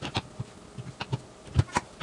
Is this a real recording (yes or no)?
yes